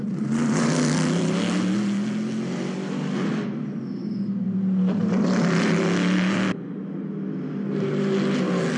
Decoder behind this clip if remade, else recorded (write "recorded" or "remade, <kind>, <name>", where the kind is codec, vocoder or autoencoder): recorded